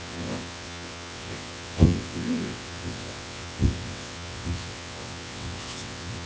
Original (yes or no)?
no